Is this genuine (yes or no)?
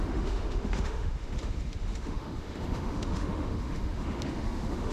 no